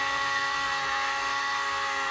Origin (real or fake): fake